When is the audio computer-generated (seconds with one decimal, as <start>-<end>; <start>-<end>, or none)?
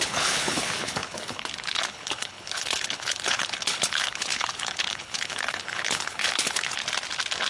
0.0-6.8